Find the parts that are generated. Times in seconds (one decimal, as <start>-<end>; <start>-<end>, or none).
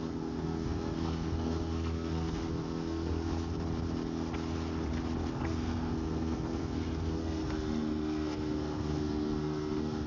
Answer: 0.0-3.3; 5.3-10.1